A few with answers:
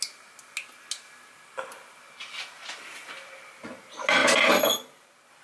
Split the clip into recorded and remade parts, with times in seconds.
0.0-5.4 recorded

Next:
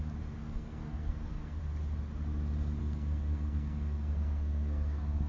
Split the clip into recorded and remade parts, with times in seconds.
0.0-0.4 recorded; 0.4-1.6 remade; 1.6-2.8 recorded; 2.8-5.3 remade

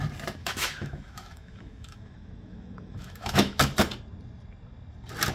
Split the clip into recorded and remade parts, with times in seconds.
0.0-0.4 recorded; 0.4-3.6 remade; 3.6-5.3 recorded

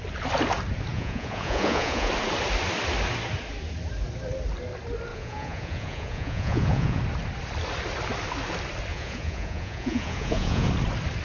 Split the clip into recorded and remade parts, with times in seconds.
0.0-0.9 recorded; 0.9-2.1 remade; 2.1-5.1 recorded; 5.1-7.0 remade; 7.0-8.9 recorded; 8.9-10.7 remade; 10.7-11.2 recorded

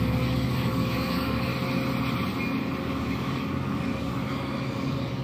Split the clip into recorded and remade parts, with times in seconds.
0.0-1.5 remade; 1.5-2.8 recorded; 2.8-5.2 remade

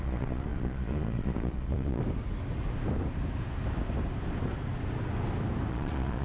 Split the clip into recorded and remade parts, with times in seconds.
0.0-2.0 remade; 2.0-5.7 recorded; 5.7-6.2 remade